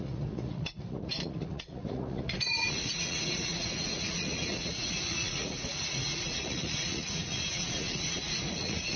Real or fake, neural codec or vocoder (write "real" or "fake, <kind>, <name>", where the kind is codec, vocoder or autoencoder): fake, vocoder, Vocos